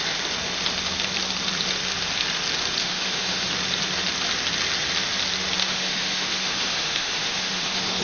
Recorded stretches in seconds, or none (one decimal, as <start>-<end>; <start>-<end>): 0.0-2.8; 3.5-5.6